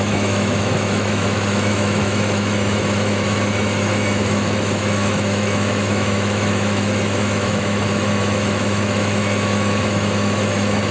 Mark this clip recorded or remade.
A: remade